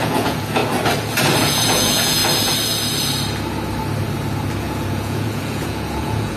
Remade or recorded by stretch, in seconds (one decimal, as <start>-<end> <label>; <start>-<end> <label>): 0.0-0.6 remade; 0.6-1.4 recorded; 1.4-2.2 remade; 2.2-4.6 recorded; 4.6-6.4 remade